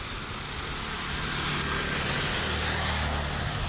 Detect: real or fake real